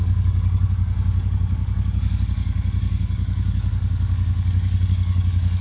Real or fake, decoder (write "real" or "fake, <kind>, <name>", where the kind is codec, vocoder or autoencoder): fake, codec, DAC